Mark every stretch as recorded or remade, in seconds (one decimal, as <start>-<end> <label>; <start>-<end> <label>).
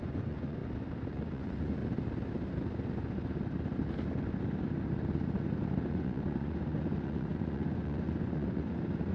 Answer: 0.0-0.6 remade; 0.6-1.1 recorded; 1.1-1.8 remade; 1.8-5.9 recorded; 5.9-9.1 remade